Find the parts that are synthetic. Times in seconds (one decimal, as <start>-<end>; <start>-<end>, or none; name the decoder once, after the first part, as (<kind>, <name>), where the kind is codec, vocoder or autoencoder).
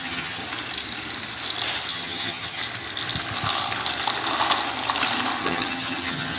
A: 0.0-0.4 (vocoder, HiFi-GAN); 1.9-2.6; 5.4-6.4